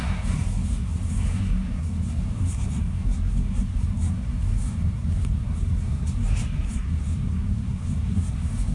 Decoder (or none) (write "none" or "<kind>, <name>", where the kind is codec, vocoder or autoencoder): codec, SNAC